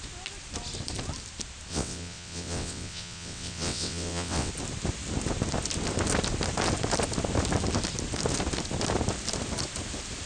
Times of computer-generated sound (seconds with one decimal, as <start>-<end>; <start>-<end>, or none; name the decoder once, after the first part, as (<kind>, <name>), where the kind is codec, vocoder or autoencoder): 1.7-4.5 (vocoder, WaveNeXt)